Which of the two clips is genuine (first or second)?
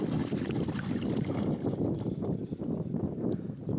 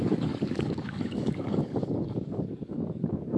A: first